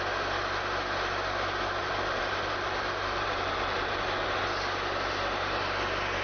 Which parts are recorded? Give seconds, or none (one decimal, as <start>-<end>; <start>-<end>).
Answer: 0.0-1.8; 4.4-6.2